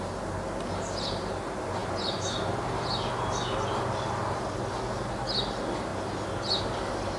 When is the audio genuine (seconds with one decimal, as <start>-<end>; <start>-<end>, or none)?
0.0-7.2